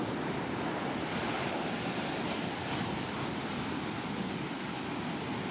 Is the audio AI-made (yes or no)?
no